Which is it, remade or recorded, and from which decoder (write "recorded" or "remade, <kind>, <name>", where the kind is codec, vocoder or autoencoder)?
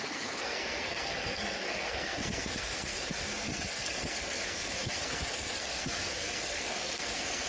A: remade, codec, SNAC